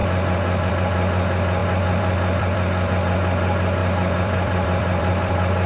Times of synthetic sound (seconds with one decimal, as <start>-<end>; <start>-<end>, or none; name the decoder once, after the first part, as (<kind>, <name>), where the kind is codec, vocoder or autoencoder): 1.6-2.9 (vocoder, BigVGAN v2); 3.8-5.7